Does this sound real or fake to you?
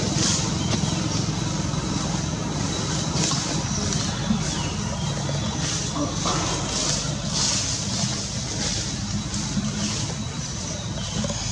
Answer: real